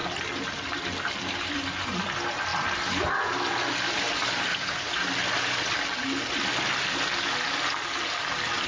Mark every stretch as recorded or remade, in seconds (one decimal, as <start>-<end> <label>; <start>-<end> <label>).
0.0-4.5 recorded; 4.5-5.0 remade; 5.0-8.7 recorded

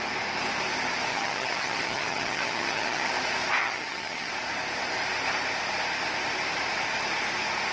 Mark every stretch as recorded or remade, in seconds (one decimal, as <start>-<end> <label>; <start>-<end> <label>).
0.0-1.1 recorded; 1.1-3.1 remade; 3.1-3.6 recorded; 3.6-4.3 remade; 4.3-7.7 recorded

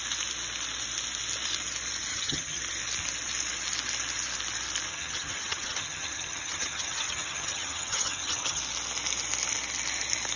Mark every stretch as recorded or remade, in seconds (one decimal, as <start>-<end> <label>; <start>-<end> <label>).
0.0-2.1 recorded; 2.1-2.6 remade; 2.6-4.9 recorded; 4.9-8.6 remade; 8.6-10.4 recorded

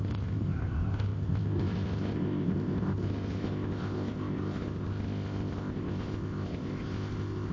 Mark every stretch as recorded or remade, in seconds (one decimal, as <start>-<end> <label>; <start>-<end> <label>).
0.0-7.5 remade

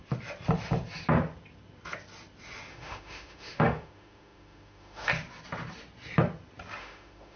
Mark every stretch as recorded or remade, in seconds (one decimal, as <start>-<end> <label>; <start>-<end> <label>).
0.0-2.7 recorded; 2.7-5.1 remade; 5.1-6.8 recorded; 6.8-7.4 remade